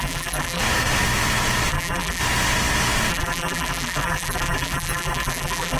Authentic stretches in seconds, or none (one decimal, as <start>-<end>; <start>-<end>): 0.6-1.7; 2.2-3.1